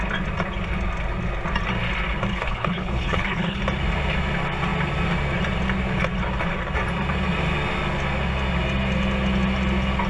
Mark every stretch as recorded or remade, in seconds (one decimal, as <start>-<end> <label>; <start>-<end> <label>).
0.0-2.3 recorded; 2.3-3.6 remade; 3.6-10.1 recorded

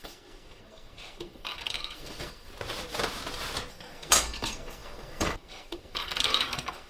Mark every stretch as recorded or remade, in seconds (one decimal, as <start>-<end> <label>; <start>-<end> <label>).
0.0-2.5 remade; 2.5-3.7 recorded; 3.7-6.9 remade

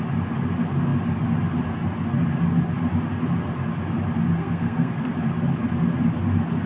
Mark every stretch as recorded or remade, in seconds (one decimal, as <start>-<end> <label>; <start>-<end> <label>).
0.0-4.4 recorded; 4.4-5.1 remade; 5.1-6.7 recorded